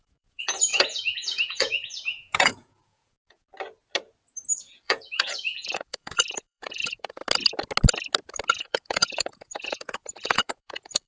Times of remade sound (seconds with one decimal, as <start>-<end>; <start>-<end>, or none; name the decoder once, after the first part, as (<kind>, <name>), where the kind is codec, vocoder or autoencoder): 0.0-3.5 (vocoder, Vocos); 4.6-7.2; 8.5-11.1